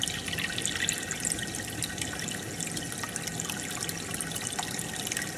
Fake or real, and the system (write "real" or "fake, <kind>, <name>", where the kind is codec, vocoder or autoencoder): real